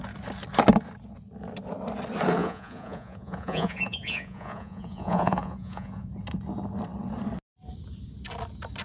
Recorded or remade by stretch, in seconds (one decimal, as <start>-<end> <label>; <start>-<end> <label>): 0.0-2.4 recorded; 2.4-6.1 remade; 6.1-8.8 recorded